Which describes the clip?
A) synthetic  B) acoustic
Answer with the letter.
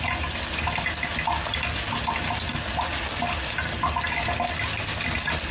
B